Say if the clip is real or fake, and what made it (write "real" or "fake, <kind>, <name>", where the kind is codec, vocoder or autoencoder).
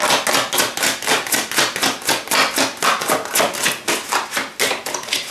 real